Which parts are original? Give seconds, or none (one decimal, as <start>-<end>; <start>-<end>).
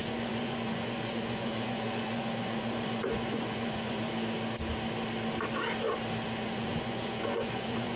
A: 4.1-6.4